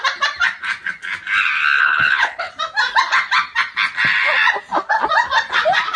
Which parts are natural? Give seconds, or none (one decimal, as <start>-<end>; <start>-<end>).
0.0-1.8; 2.5-6.0